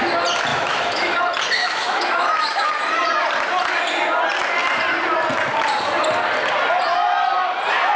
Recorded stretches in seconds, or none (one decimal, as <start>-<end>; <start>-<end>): 0.0-0.5; 1.2-1.6; 2.8-8.0